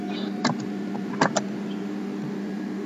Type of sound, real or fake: real